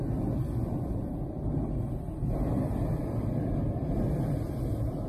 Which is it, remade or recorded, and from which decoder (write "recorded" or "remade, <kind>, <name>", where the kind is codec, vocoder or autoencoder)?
recorded